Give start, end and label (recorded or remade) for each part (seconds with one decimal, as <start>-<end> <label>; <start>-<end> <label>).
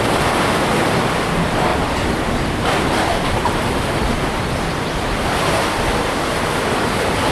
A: 0.0-7.3 recorded